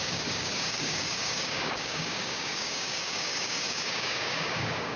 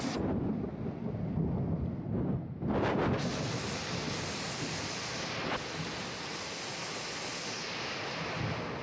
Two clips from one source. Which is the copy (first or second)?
first